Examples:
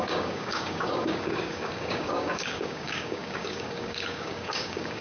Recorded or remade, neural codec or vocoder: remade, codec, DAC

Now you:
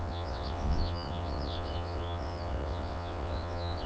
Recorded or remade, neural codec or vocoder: remade, vocoder, WaveNeXt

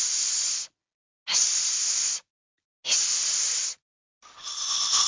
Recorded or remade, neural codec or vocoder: recorded